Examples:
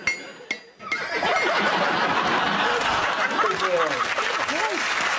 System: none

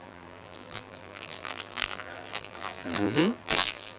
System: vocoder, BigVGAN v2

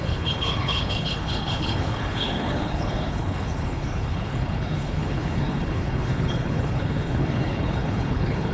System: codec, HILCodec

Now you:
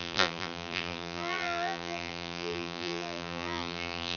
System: vocoder, BigVGAN v2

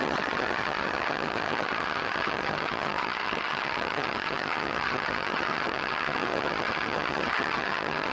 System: vocoder, HiFi-GAN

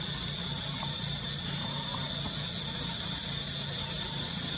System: none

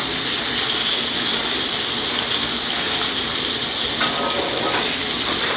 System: none